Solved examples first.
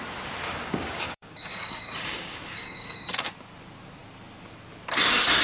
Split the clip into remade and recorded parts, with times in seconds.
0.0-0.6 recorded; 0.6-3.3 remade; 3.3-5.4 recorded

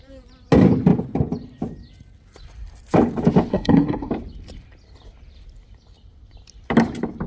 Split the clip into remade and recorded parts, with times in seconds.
0.0-3.5 recorded; 3.5-4.1 remade; 4.1-7.3 recorded

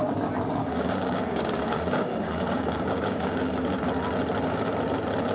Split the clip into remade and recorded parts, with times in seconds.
0.0-0.6 recorded; 0.6-3.8 remade; 3.8-5.3 recorded

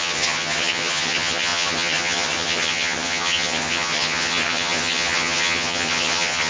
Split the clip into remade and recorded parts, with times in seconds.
0.0-6.5 remade

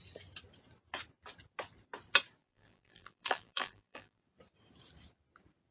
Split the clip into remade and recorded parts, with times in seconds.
0.0-2.4 recorded; 2.4-4.2 remade; 4.2-5.7 recorded

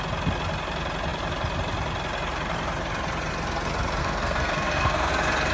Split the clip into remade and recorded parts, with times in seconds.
0.0-4.0 recorded; 4.0-5.1 remade; 5.1-5.5 recorded

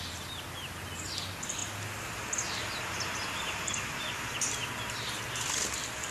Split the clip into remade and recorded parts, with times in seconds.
0.0-6.1 recorded

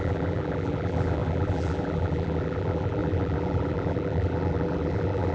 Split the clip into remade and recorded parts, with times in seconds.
0.0-5.3 remade